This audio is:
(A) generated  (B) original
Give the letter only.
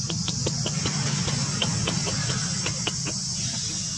B